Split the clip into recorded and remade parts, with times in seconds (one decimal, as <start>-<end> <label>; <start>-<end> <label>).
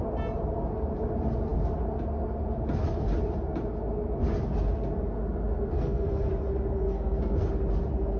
0.0-5.7 recorded; 5.7-6.3 remade; 6.3-6.8 recorded; 6.8-7.5 remade; 7.5-8.2 recorded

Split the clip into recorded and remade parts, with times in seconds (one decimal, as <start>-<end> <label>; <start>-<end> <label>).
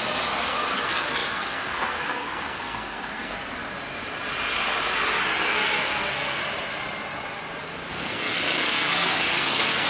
0.0-3.6 remade; 3.6-5.5 recorded; 5.5-6.4 remade; 6.4-7.9 recorded; 7.9-9.9 remade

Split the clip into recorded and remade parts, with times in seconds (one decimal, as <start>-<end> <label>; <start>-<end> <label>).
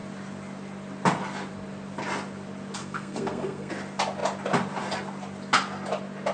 0.0-2.8 recorded; 2.8-3.7 remade; 3.7-6.3 recorded